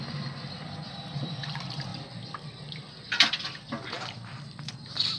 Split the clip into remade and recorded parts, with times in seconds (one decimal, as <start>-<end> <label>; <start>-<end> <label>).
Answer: 0.0-5.2 remade